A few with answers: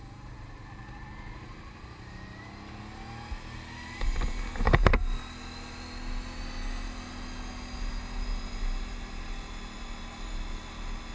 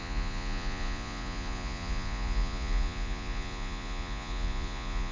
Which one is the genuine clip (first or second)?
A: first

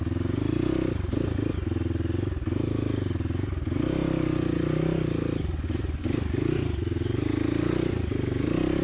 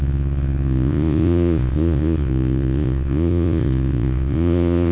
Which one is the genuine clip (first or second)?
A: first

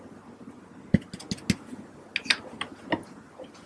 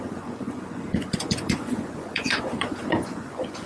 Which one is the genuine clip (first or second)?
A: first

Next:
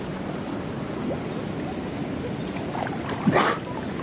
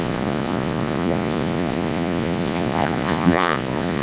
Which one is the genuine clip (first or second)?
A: first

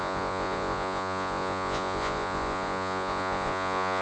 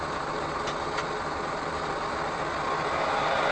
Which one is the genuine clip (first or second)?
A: second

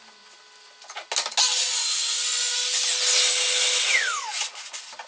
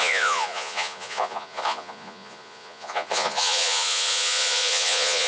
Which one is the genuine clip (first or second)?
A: first